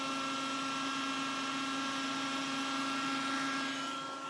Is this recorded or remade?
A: recorded